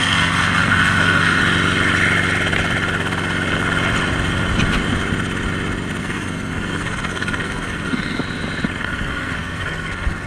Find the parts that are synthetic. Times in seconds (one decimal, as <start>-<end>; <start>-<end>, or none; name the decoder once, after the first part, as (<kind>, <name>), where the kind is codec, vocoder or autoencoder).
0.0-1.4 (codec, SNAC); 6.0-8.2; 8.8-10.3